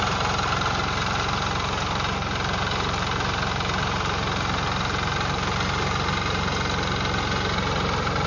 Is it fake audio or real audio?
real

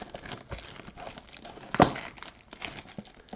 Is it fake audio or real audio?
real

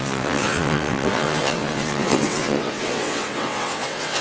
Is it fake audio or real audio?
fake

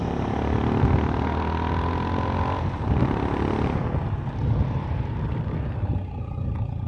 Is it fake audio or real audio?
real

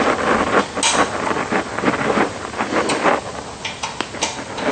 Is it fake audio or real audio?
real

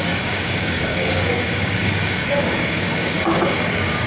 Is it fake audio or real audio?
fake